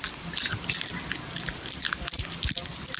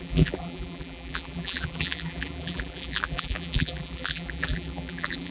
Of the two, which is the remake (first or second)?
second